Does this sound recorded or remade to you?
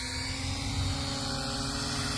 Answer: recorded